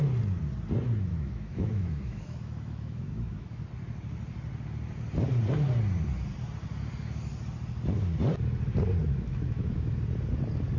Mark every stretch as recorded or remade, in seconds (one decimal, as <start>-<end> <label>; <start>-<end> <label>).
0.0-1.1 recorded; 1.1-3.6 remade; 3.6-9.0 recorded; 9.0-9.9 remade; 9.9-10.8 recorded